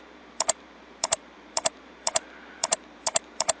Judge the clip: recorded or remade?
remade